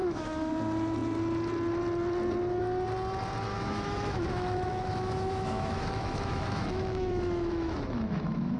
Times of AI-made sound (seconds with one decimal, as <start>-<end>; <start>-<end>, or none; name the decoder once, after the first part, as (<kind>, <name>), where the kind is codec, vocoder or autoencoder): 0.0-0.5 (autoencoder, DAC-VAE); 3.5-8.6